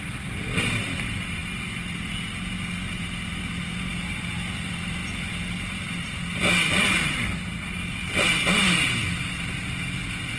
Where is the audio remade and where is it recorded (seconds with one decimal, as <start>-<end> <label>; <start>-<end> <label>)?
0.0-10.4 recorded